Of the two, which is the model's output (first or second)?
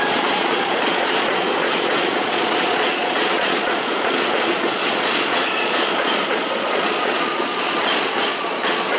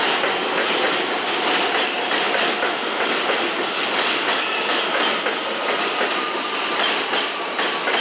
first